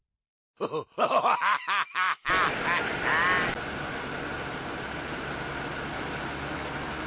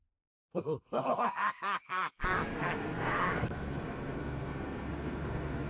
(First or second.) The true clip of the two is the first